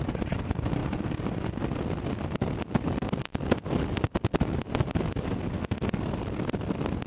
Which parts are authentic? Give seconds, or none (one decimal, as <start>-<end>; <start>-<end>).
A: 0.0-5.5; 6.2-7.1